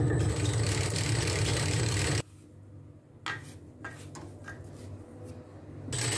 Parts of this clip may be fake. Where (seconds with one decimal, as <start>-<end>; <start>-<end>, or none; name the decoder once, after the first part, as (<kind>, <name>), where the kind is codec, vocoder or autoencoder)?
none